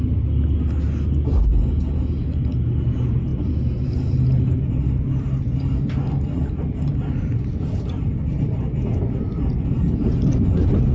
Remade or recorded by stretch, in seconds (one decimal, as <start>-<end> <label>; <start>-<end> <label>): 0.0-10.9 recorded

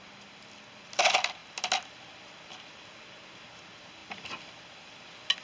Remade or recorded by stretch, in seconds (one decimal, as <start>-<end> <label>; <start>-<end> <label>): 0.0-5.4 recorded

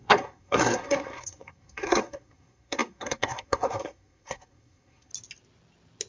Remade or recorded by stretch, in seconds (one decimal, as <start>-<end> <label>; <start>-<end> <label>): 0.0-5.1 remade; 5.1-6.1 recorded

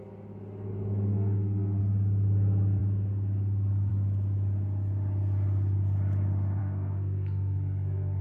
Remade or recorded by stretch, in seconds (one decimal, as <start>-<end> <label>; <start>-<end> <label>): 0.0-0.7 recorded; 0.7-1.8 remade; 1.8-6.6 recorded; 6.6-8.2 remade

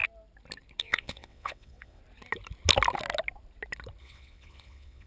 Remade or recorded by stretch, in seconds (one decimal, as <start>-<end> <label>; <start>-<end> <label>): 0.0-0.8 recorded; 0.8-2.0 remade; 2.0-4.0 recorded; 4.0-5.1 remade

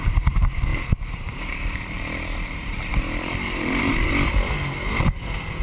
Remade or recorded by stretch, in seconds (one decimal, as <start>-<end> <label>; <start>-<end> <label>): 0.0-0.7 recorded; 0.7-4.1 remade; 4.1-5.6 recorded